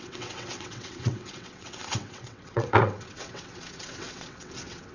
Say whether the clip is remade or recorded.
remade